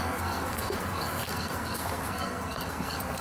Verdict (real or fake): fake